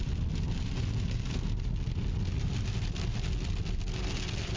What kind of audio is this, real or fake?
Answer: real